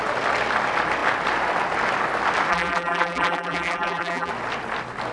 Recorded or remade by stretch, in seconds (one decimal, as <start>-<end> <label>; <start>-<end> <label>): 0.0-2.5 recorded; 2.5-4.3 remade; 4.3-5.1 recorded